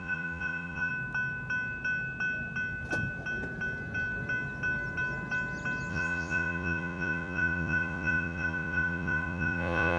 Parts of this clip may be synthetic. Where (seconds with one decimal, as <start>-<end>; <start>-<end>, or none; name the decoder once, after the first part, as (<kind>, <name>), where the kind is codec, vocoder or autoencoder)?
0.0-0.9 (vocoder, Vocos); 5.9-10.0